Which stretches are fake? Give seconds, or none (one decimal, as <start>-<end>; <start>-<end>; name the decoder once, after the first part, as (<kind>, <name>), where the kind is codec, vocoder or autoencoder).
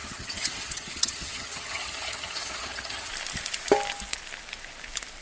0.0-3.1 (vocoder, HiFi-GAN)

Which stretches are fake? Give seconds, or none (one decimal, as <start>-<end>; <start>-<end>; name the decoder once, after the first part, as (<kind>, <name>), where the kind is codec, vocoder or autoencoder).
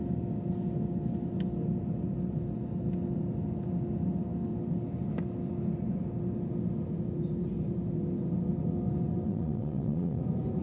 9.3-10.2 (vocoder, Vocos)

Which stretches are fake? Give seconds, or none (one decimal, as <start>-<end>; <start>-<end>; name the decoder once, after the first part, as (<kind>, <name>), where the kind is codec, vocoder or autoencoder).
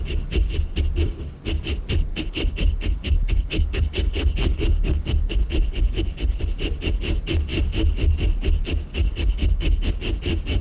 2.1-6.4 (codec, HILCodec); 8.9-9.9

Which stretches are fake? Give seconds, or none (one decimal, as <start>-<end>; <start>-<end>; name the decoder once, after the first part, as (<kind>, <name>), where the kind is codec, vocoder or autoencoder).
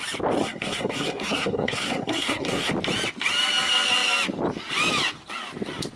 0.4-2.7 (codec, SNAC)